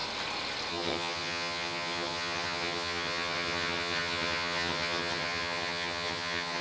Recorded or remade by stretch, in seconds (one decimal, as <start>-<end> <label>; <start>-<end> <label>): 0.0-0.7 recorded; 0.7-6.6 remade